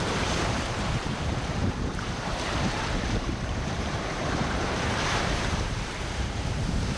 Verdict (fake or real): fake